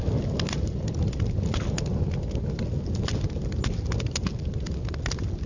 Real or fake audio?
real